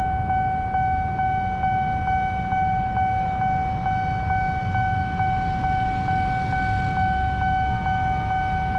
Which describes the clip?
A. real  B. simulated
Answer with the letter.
A